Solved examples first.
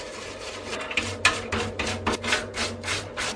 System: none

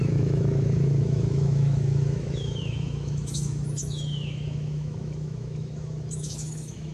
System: autoencoder, DAC-VAE